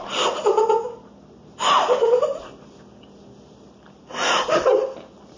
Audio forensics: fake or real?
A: real